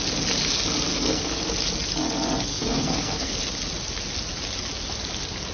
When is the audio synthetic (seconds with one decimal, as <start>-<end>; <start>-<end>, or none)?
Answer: 0.9-1.4; 2.5-3.3

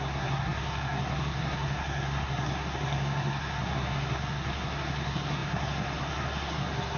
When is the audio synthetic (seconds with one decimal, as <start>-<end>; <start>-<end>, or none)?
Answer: 0.0-7.0

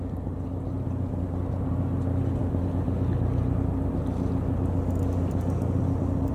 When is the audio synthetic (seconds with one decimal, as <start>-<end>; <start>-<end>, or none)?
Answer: none

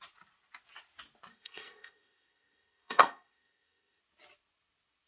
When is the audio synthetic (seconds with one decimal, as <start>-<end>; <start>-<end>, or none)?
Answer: 1.3-4.0

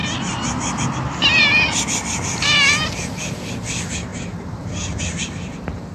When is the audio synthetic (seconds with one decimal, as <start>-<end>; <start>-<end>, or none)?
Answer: none